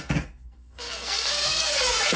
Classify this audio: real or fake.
fake